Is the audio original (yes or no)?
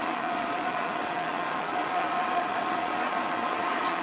no